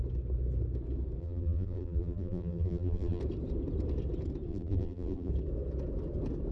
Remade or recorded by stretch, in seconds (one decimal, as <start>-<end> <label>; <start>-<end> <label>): 0.0-1.2 recorded; 1.2-3.2 remade; 3.2-4.5 recorded; 4.5-5.3 remade; 5.3-6.5 recorded